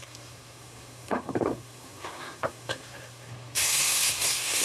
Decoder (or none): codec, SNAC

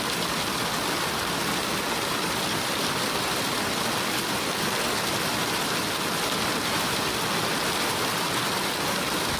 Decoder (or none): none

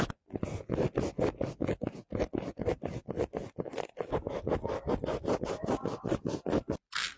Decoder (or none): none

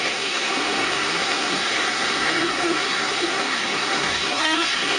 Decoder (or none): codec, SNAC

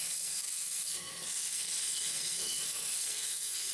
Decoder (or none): codec, SNAC